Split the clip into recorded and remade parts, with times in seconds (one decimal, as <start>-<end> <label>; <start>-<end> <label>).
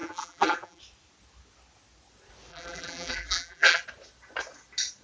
0.0-0.8 remade; 0.8-2.5 recorded; 2.5-3.8 remade; 3.8-5.0 recorded